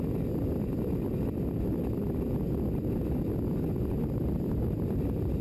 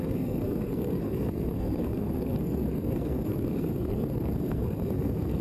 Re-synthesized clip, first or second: second